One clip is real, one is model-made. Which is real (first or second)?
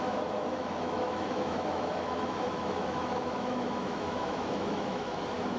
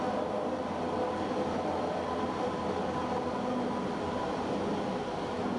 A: second